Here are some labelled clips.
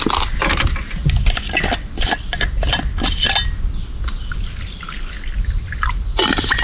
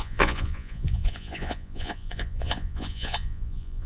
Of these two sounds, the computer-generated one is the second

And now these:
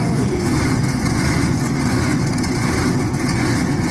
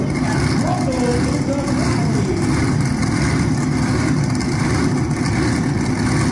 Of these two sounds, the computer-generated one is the first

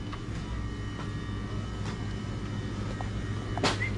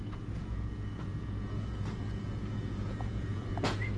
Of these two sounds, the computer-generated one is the second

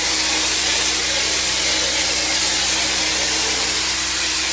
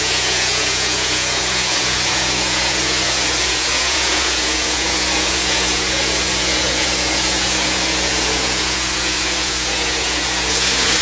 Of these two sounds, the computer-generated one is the second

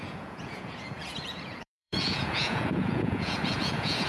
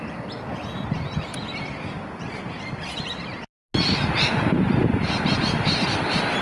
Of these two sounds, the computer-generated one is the first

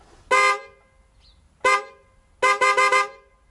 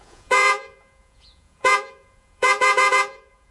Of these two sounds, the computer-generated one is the second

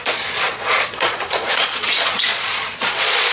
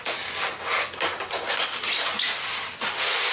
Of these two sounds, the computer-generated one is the first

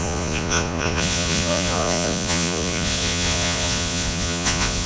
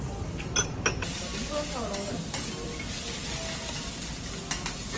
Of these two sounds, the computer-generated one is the first